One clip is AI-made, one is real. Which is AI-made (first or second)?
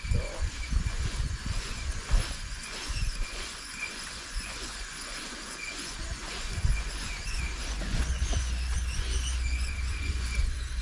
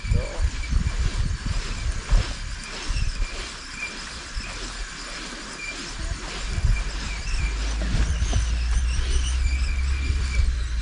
first